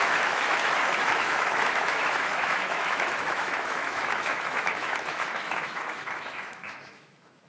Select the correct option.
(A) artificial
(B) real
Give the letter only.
A